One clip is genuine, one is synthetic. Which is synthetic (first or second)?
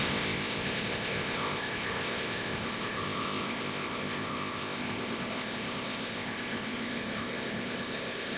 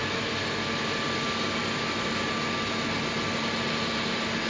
first